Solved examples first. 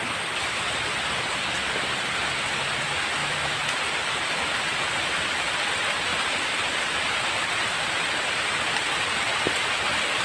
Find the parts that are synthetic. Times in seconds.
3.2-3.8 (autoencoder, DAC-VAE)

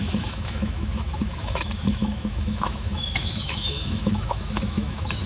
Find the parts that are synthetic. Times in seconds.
0.0-5.3 (autoencoder, DAC-VAE)

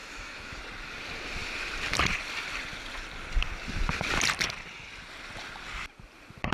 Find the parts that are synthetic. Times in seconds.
0.0-0.6 (autoencoder, DAC-VAE)

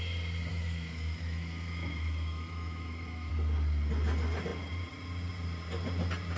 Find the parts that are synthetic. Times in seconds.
0.5-3.3 (autoencoder, DAC-VAE)

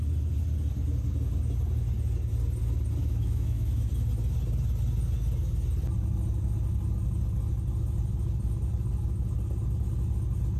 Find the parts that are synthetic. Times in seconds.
3.0-3.9 (autoencoder, DAC-VAE)

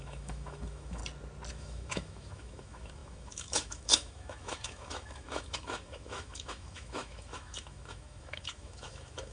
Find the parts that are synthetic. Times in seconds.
0.0-1.0 (autoencoder, DAC-VAE); 1.5-9.3

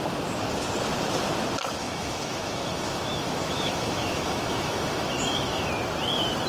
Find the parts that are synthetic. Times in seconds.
1.8-5.7 (autoencoder, DAC-VAE)

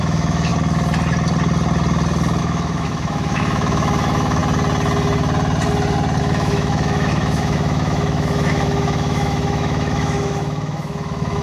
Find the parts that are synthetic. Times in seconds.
0.0-0.5 (autoencoder, DAC-VAE); 2.4-4.4; 6.2-11.4